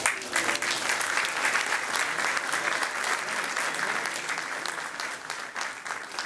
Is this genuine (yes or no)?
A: yes